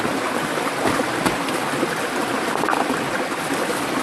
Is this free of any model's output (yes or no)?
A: yes